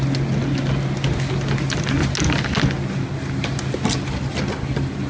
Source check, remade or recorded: recorded